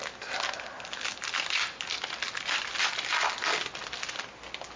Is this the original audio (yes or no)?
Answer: yes